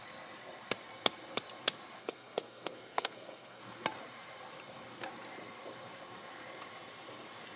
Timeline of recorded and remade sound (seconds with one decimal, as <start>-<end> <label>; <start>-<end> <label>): 0.0-2.0 recorded; 2.0-3.6 remade; 3.6-7.6 recorded